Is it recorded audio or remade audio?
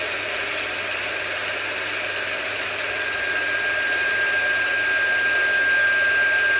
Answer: recorded